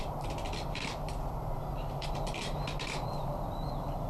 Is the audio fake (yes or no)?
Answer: no